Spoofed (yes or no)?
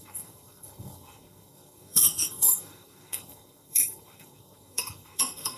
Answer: yes